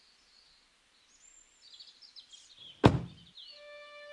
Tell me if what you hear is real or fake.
real